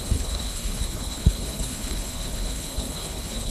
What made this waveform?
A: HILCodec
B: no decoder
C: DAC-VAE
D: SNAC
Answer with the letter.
A